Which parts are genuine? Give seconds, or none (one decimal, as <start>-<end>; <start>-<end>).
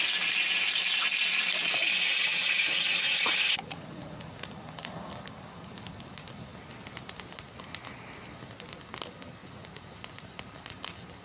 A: 0.0-2.2; 4.3-9.4; 9.9-11.2